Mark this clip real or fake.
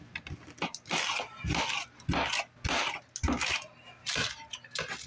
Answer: real